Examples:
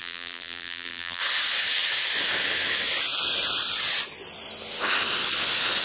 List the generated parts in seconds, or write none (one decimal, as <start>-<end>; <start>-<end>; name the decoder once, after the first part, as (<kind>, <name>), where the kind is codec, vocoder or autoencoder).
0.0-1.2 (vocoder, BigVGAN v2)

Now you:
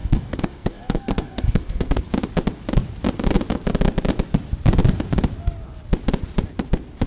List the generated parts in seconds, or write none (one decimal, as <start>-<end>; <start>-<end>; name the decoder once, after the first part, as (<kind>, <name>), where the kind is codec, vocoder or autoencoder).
0.0-2.1 (codec, SNAC)

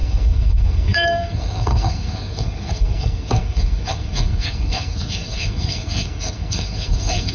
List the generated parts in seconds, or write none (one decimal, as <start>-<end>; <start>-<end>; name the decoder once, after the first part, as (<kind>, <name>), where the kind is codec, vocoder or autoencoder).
0.0-7.3 (codec, SNAC)

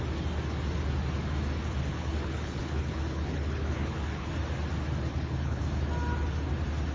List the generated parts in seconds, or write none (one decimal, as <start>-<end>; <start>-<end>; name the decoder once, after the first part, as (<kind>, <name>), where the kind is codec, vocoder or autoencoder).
1.9-4.3 (codec, HILCodec); 5.1-5.6

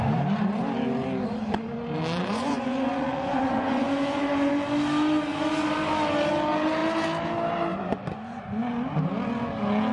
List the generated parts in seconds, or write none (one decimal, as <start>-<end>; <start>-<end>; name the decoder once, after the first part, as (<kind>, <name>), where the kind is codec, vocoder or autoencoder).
2.2-4.5 (vocoder, Vocos)

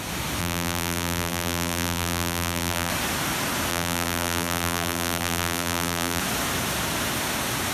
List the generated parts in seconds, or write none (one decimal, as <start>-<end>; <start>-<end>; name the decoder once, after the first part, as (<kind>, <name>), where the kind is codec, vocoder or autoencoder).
0.4-2.9 (vocoder, BigVGAN v2); 3.7-6.2

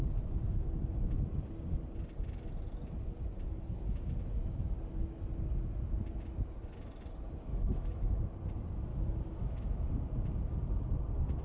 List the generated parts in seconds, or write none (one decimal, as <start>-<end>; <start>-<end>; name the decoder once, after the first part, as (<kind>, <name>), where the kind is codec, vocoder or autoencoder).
7.5-8.2 (autoencoder, DAC-VAE); 8.9-9.9